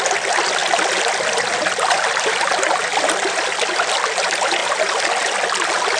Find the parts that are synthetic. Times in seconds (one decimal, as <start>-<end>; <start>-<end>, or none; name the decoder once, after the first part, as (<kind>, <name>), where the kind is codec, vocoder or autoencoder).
none